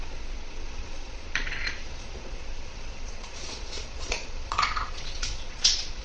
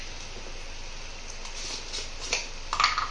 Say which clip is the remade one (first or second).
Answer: first